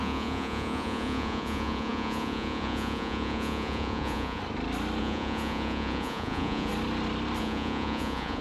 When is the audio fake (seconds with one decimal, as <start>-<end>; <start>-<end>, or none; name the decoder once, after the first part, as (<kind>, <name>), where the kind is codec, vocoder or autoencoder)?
0.0-4.4 (vocoder, Vocos); 5.0-6.7; 7.4-8.4

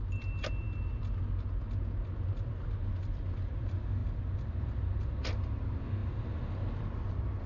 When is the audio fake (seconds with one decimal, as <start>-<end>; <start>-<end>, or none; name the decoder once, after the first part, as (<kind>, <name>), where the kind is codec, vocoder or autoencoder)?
none

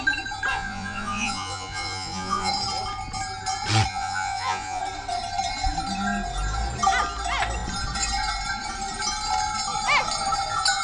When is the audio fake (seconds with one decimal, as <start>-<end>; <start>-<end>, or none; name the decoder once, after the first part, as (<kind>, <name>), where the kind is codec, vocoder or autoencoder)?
0.5-2.5 (vocoder, Vocos); 3.9-4.8

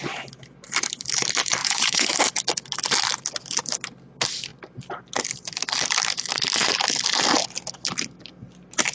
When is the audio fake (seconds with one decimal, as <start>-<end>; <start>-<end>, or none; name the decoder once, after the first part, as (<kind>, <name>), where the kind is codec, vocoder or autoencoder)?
1.6-2.1 (vocoder, Vocos)

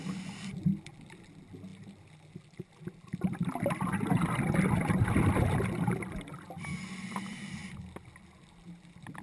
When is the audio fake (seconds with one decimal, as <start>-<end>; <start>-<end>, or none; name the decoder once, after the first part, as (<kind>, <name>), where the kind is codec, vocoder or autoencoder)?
none